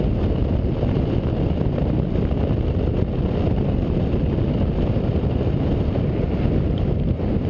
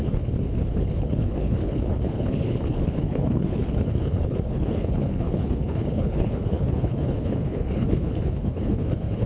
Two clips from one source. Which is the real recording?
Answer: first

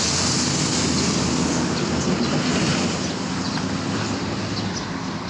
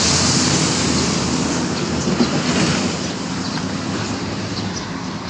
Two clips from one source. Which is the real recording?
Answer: first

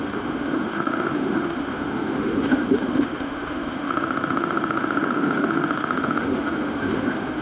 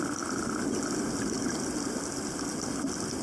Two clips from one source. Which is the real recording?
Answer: second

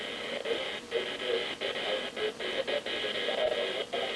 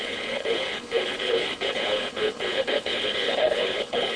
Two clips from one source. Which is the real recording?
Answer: first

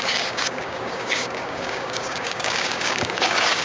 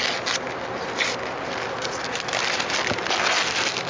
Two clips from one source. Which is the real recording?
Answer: second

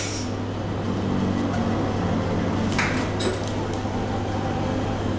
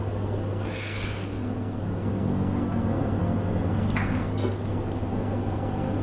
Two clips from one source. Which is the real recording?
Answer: first